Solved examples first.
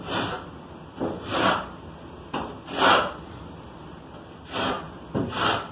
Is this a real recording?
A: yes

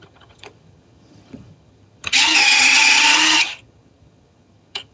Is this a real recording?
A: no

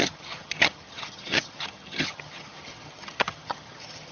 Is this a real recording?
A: no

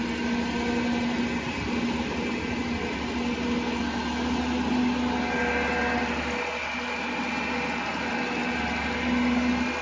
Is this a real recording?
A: yes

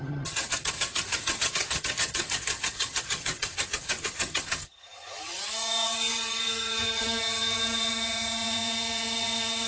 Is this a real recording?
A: no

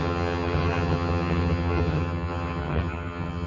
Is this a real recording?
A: no